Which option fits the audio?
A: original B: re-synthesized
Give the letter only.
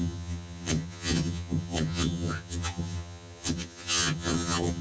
B